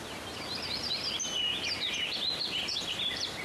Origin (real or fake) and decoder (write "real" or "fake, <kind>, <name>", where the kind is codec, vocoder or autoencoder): fake, vocoder, BigVGAN v2